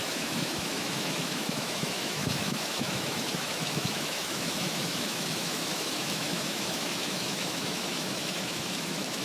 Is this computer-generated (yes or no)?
yes